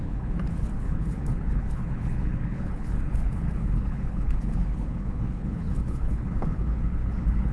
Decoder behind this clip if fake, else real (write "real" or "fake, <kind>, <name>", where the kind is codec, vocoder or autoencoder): fake, codec, HILCodec